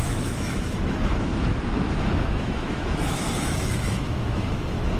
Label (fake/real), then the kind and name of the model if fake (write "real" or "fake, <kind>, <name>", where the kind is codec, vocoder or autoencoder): fake, autoencoder, DAC-VAE